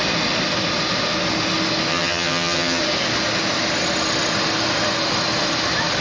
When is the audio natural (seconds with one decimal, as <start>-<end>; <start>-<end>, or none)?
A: 0.0-1.9; 2.8-6.0